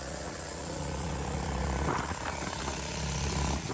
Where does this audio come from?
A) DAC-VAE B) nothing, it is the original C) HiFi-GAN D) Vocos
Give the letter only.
D